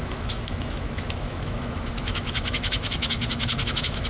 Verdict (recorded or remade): remade